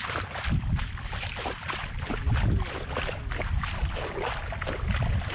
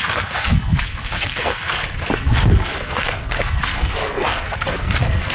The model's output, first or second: second